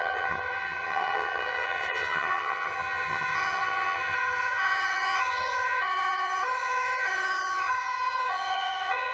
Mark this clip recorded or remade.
remade